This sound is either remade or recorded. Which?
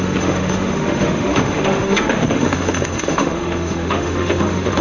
remade